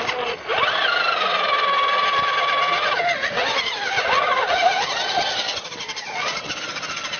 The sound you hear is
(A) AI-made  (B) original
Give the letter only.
B